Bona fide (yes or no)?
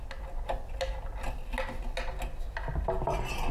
yes